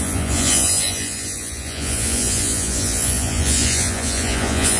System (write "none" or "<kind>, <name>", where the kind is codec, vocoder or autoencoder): vocoder, Vocos